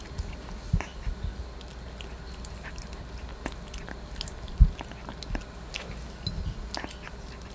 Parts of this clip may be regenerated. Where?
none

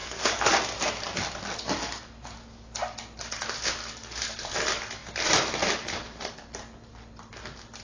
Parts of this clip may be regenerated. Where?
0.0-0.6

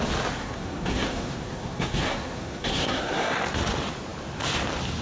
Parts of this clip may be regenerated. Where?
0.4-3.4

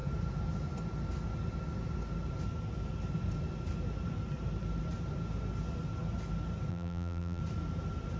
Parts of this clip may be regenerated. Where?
6.7-7.4

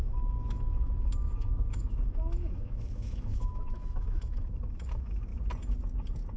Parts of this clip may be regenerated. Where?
0.0-5.3

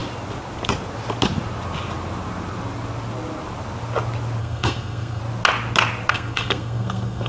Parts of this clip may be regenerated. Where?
4.4-5.2; 6.1-7.3

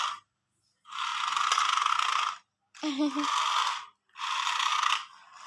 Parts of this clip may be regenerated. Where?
0.0-1.1; 4.2-4.7

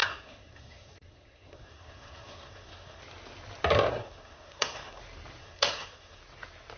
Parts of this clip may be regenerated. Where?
0.0-3.0; 3.9-5.0; 5.4-6.2